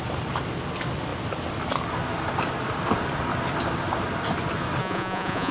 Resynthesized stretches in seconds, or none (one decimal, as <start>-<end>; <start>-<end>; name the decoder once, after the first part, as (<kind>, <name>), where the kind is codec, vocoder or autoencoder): 4.8-5.5 (vocoder, Vocos)

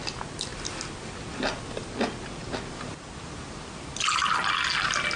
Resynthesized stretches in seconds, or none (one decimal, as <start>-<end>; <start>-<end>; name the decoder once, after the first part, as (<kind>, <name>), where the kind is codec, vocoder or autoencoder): none